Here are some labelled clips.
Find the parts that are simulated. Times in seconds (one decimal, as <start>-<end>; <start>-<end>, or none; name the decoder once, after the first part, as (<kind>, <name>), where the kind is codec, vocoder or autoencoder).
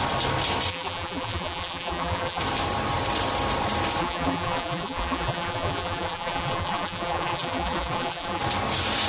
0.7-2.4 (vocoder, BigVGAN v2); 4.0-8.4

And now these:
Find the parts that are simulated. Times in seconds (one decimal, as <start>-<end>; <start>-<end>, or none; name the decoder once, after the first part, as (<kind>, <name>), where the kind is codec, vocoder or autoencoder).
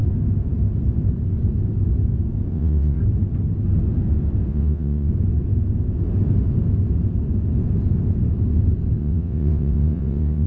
2.5-3.0 (vocoder, WaveNeXt); 4.5-5.1; 9.0-10.5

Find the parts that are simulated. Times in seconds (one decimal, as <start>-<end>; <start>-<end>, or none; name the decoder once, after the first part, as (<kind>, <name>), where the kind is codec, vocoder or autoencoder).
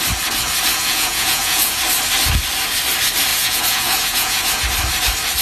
0.7-1.8 (vocoder, Vocos); 3.3-4.6